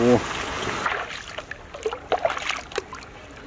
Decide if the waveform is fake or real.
real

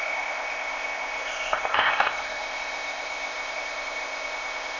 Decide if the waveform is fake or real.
fake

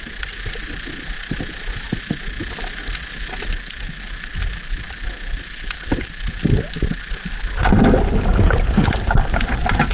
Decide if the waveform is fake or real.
real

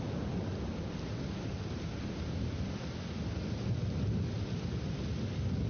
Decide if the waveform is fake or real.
real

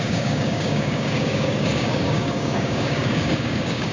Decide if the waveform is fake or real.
fake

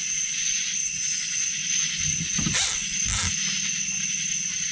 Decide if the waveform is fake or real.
real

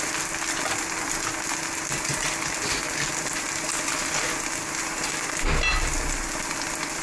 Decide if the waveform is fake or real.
real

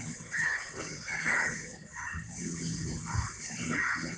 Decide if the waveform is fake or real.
fake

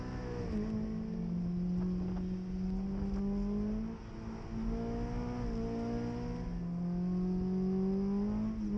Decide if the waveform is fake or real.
real